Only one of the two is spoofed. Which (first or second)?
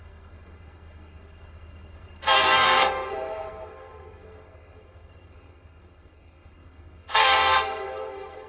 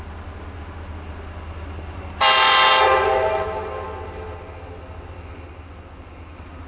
first